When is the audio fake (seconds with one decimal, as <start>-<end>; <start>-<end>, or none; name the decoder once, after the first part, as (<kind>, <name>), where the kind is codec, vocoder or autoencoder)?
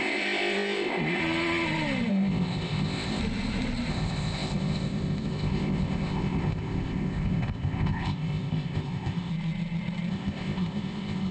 0.0-1.2 (codec, ZipCodec); 2.1-3.2; 3.9-9.3; 10.1-11.3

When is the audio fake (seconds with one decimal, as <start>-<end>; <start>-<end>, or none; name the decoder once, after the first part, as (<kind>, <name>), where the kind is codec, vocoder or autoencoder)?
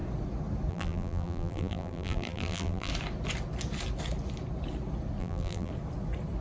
0.7-2.9 (vocoder, BigVGAN v2); 5.2-5.7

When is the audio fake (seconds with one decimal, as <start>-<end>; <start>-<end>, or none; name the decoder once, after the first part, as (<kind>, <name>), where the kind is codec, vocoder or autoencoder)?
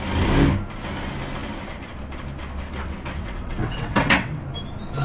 3.2-4.4 (vocoder, WaveNeXt)